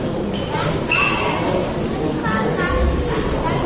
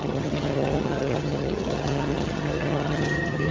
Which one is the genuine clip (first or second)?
first